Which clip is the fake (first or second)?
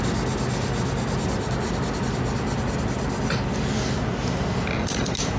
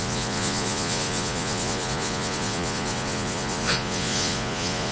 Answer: second